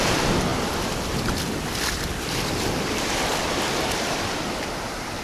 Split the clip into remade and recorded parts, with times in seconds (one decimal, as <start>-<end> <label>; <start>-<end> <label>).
0.0-5.2 recorded